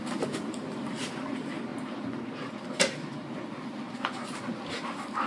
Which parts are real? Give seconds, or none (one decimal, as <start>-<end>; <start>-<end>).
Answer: 0.0-5.3